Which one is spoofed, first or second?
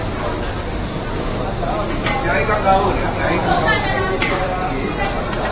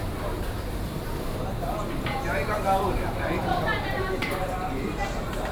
second